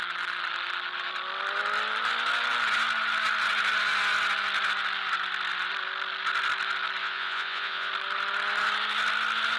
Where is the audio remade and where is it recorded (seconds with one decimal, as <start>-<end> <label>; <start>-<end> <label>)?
0.0-7.0 recorded; 7.0-7.9 remade; 7.9-9.6 recorded